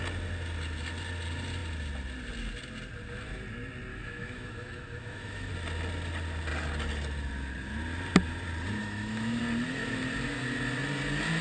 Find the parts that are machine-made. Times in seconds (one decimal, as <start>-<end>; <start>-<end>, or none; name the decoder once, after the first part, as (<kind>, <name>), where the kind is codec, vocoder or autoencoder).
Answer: 3.9-5.5 (autoencoder, DAC-VAE); 8.8-9.4